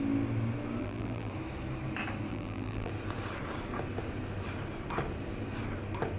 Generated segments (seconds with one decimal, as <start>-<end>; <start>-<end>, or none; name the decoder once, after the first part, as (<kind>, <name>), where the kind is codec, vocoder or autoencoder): 0.8-1.3 (vocoder, BigVGAN v2); 2.3-2.9